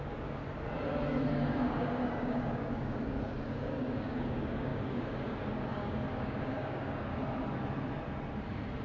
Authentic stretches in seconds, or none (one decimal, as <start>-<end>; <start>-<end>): 0.4-1.3; 7.1-8.8